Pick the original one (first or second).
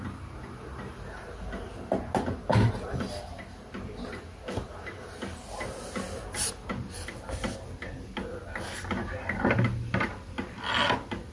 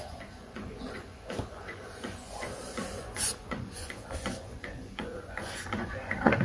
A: first